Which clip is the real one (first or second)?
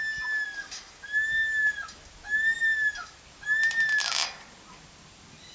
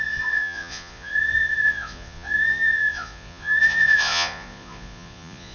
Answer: first